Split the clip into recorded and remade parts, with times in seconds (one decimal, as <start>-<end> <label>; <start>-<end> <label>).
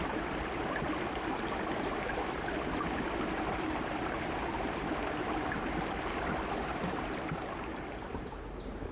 0.0-8.9 recorded